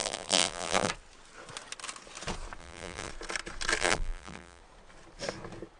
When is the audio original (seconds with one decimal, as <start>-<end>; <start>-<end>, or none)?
0.9-2.6; 3.1-3.8; 4.6-5.8